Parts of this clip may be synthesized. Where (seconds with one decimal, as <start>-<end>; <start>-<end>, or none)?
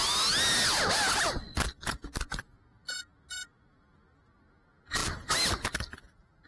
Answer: none